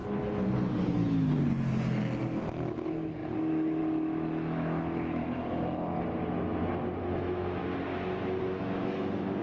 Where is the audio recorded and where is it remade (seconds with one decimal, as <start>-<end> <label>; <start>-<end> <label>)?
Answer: 0.0-2.2 recorded; 2.2-5.2 remade; 5.2-7.0 recorded; 7.0-7.6 remade; 7.6-8.4 recorded; 8.4-9.4 remade